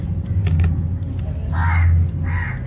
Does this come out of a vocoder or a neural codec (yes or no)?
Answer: no